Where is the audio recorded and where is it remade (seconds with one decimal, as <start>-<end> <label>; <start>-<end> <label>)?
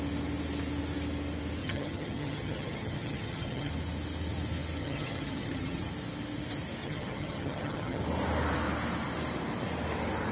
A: 0.0-1.6 recorded; 1.6-3.7 remade; 3.7-4.8 recorded; 4.8-5.9 remade; 5.9-6.8 recorded; 6.8-8.0 remade; 8.0-10.3 recorded